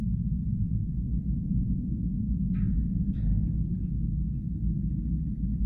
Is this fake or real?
real